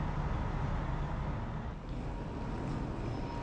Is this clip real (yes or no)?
yes